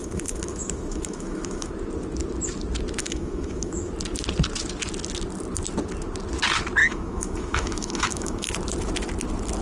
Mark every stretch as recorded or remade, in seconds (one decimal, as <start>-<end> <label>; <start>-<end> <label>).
0.0-1.7 remade; 1.7-3.0 recorded; 3.0-3.9 remade; 3.9-6.8 recorded; 6.8-8.5 remade; 8.5-9.6 recorded